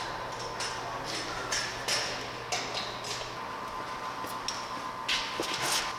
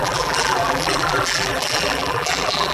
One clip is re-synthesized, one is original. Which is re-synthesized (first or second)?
second